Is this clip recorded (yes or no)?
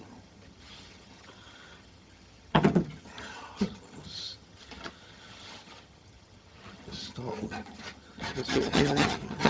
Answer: no